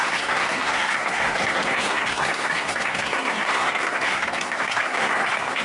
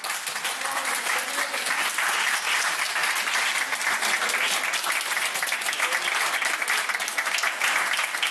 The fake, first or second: first